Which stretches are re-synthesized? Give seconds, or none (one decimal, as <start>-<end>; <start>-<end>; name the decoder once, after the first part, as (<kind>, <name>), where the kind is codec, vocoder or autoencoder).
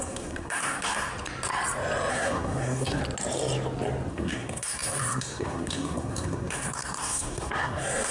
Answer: 0.0-1.1 (codec, SNAC); 2.1-3.0; 4.1-8.1